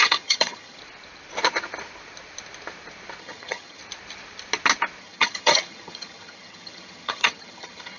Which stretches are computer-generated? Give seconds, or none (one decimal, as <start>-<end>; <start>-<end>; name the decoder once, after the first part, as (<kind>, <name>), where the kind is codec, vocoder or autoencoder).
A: 0.0-0.8 (vocoder, HiFi-GAN); 3.2-3.8; 5.0-8.0